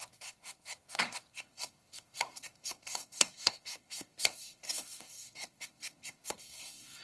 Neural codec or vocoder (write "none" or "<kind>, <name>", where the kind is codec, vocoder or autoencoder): codec, SNAC